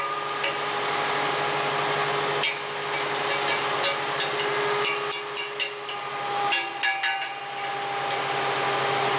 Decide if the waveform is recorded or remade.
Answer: recorded